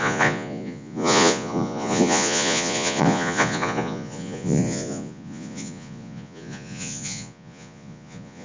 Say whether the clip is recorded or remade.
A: remade